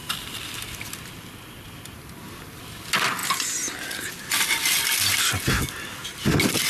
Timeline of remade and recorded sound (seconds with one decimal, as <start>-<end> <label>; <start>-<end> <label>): 0.0-6.7 recorded